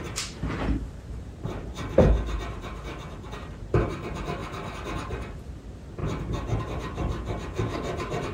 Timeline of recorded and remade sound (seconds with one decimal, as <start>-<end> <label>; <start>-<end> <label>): 0.0-4.4 remade; 4.4-5.0 recorded; 5.0-6.0 remade; 6.0-6.6 recorded; 6.6-8.3 remade